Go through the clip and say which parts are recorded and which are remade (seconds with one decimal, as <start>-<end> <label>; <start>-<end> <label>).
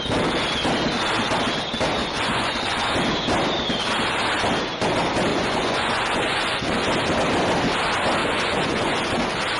0.0-2.0 recorded; 2.0-2.9 remade; 2.9-5.3 recorded; 5.3-6.8 remade; 6.8-8.2 recorded; 8.2-9.2 remade; 9.2-9.6 recorded